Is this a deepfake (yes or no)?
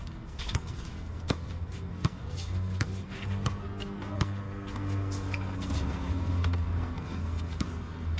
yes